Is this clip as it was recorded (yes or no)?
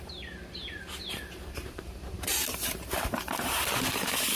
no